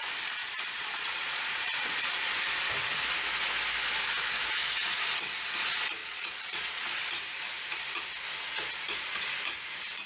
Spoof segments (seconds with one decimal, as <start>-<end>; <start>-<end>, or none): 0.4-2.6; 6.0-7.0